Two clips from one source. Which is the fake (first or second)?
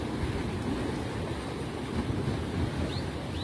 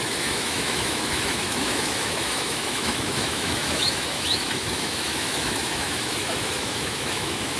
second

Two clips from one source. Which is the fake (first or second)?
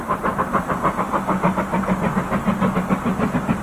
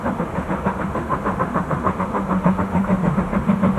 second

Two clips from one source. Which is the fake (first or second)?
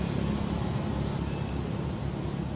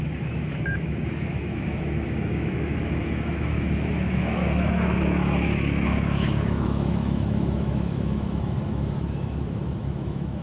second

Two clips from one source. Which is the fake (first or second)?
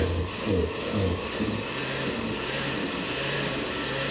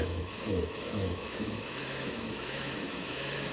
second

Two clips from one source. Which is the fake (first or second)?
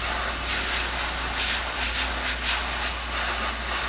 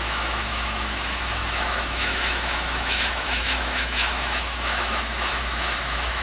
second